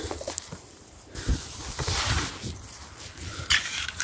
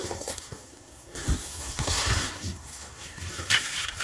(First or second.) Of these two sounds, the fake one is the second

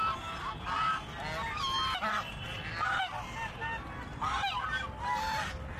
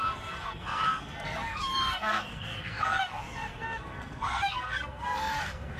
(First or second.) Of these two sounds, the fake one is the second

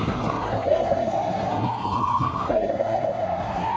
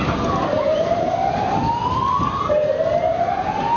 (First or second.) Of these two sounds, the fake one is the first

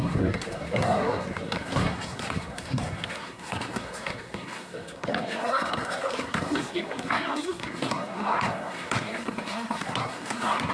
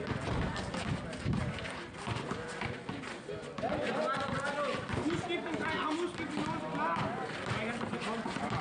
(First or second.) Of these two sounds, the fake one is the first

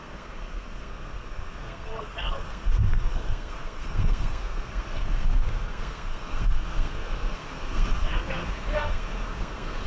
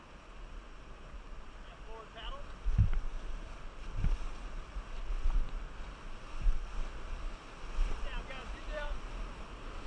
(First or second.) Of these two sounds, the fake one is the first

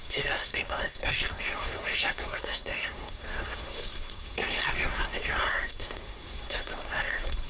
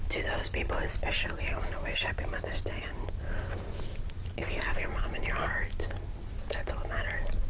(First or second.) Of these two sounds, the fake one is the first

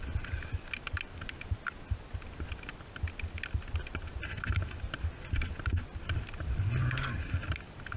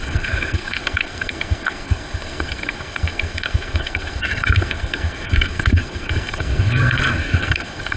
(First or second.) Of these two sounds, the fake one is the second